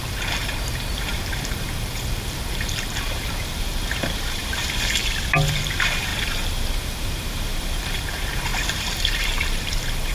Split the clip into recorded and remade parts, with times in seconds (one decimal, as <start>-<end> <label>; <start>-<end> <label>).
0.0-5.0 remade; 5.0-5.5 recorded; 5.5-6.1 remade; 6.1-6.7 recorded; 6.7-10.1 remade